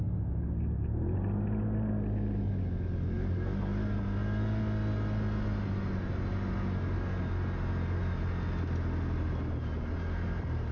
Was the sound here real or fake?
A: real